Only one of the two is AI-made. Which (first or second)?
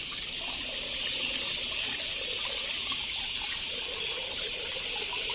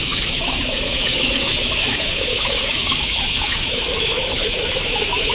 second